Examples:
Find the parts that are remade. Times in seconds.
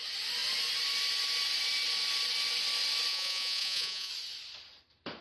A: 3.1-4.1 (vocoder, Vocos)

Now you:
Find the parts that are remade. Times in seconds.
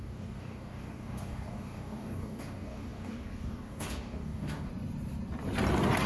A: 0.0-4.7 (codec, DAC)